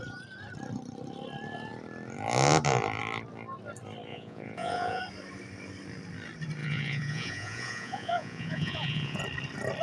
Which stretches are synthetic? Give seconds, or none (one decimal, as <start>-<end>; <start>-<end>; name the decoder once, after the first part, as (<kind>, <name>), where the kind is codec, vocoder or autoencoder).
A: 4.1-5.0 (vocoder, Vocos); 6.6-9.2